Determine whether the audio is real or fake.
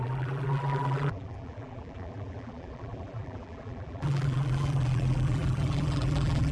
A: fake